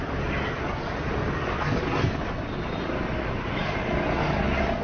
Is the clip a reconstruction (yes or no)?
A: no